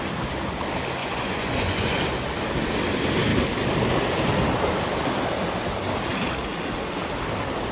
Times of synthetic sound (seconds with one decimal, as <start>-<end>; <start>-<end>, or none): 1.0-2.0